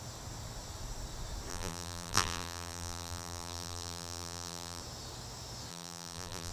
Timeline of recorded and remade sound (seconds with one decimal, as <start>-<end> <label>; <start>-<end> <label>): 0.0-1.5 recorded; 1.5-4.8 remade; 4.8-5.7 recorded; 5.7-6.5 remade